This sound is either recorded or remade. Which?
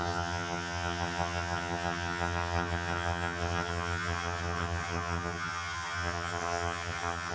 remade